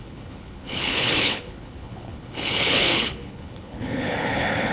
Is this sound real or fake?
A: fake